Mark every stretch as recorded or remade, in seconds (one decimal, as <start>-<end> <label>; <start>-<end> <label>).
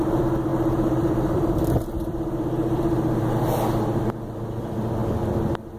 0.0-5.0 remade; 5.0-5.8 recorded